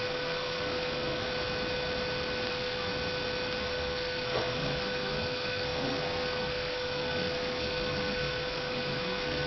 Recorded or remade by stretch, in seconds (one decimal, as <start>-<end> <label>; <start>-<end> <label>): 0.0-1.3 remade; 1.3-2.5 recorded; 2.5-2.9 remade; 2.9-3.6 recorded; 3.6-9.5 remade